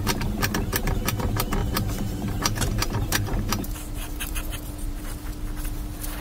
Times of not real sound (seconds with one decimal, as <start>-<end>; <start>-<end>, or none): 1.6-5.3